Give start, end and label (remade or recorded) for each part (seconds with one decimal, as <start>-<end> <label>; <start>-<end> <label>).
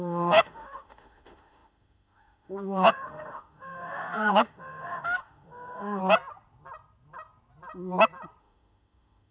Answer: 0.0-6.0 remade; 6.0-8.4 recorded; 8.4-9.3 remade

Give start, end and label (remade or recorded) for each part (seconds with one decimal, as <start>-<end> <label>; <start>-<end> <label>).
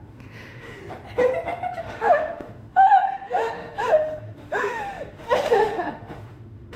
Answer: 0.0-0.8 remade; 0.8-1.8 recorded; 1.8-6.8 remade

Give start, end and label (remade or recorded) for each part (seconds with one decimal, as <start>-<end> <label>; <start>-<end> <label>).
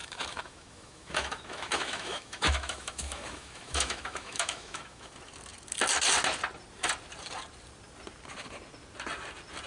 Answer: 0.0-5.1 remade; 5.1-9.7 recorded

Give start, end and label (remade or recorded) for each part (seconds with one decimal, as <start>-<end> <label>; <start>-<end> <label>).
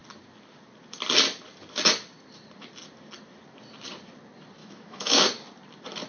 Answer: 0.0-4.6 recorded; 4.6-5.2 remade; 5.2-6.1 recorded